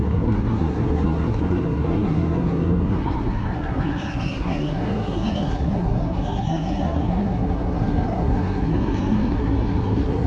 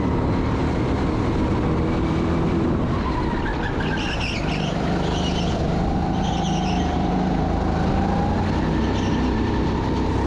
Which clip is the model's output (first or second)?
first